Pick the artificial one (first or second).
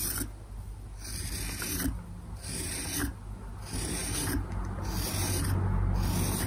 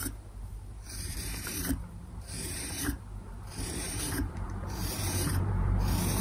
second